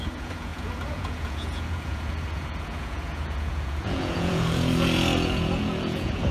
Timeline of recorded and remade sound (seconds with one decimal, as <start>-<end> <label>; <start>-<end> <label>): 0.0-6.3 remade